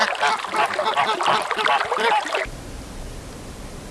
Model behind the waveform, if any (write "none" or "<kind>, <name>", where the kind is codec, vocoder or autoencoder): none